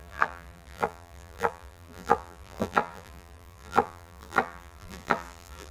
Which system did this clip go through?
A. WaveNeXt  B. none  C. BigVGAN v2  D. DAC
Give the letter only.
C